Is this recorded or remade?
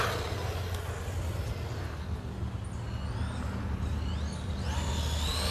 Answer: recorded